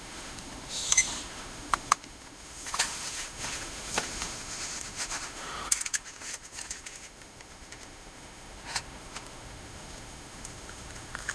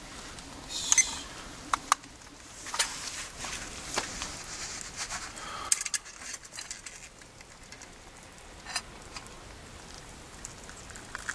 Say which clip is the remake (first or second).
first